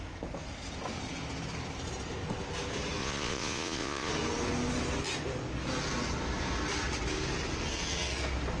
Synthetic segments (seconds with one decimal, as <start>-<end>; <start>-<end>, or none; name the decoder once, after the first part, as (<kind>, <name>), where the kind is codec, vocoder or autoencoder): 3.0-4.1 (vocoder, Vocos)